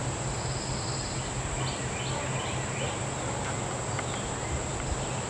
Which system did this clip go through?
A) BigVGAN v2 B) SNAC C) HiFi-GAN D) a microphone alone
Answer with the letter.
D